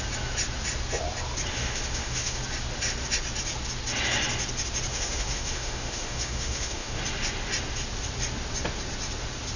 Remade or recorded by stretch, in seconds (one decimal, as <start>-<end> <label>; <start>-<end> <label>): 0.0-1.5 recorded; 1.5-2.4 remade; 2.4-4.9 recorded; 4.9-7.0 remade; 7.0-9.6 recorded